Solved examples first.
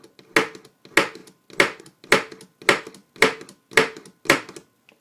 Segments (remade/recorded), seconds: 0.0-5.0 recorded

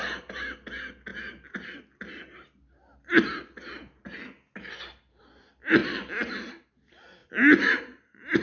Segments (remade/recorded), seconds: 0.0-8.4 recorded

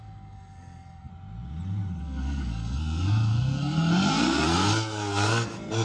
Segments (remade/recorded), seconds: 0.0-1.1 remade; 1.1-2.0 recorded; 2.0-5.8 remade

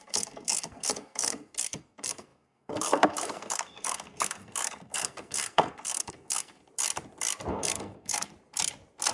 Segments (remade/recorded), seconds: 0.0-6.6 remade; 6.6-7.5 recorded; 7.5-8.3 remade; 8.3-9.1 recorded

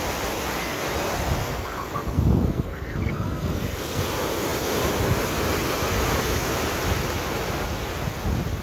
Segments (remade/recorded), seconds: 0.0-1.4 recorded; 1.4-4.0 remade; 4.0-8.6 recorded

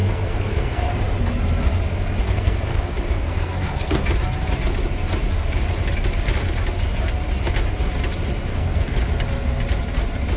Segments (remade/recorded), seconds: 0.0-0.9 remade; 0.9-2.2 recorded; 2.2-4.0 remade; 4.0-8.5 recorded; 8.5-9.0 remade; 9.0-10.4 recorded